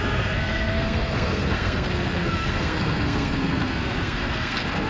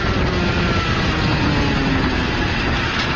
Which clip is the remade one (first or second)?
first